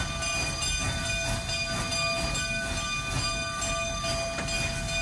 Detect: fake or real real